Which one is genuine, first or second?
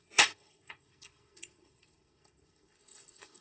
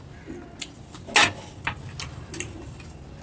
second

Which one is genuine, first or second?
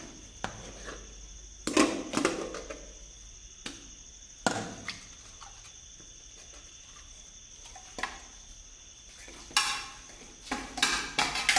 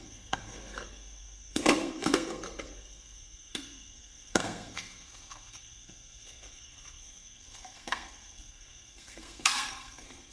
first